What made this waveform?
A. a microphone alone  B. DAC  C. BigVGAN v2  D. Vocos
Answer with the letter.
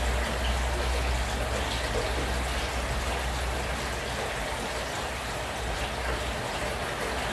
A